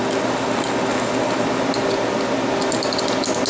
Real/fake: real